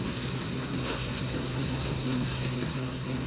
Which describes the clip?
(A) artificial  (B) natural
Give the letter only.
A